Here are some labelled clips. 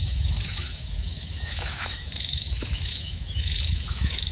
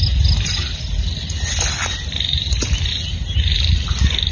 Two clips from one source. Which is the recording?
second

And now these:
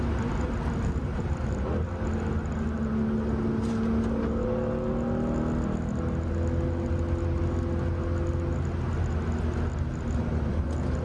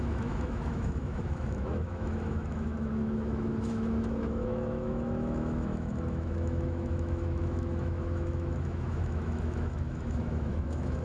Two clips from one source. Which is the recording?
first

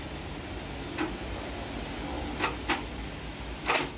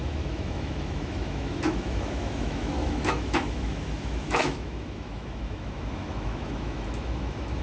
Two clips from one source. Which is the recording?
first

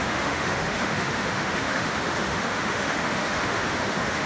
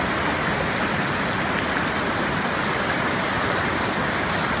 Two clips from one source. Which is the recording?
second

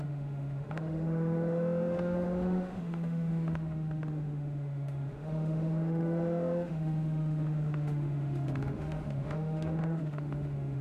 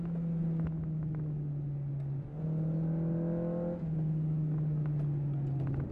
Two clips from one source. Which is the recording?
second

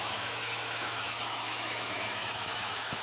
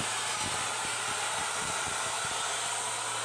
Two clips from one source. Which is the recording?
second